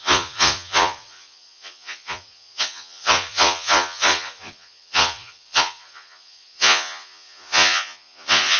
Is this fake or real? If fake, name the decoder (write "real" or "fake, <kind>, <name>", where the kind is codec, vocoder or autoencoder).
fake, vocoder, Vocos